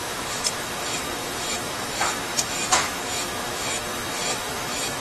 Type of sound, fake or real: fake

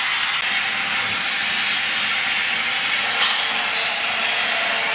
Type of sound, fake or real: real